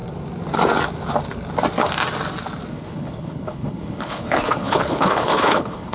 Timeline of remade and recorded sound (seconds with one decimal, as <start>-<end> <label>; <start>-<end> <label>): 0.0-2.7 recorded; 2.7-5.9 remade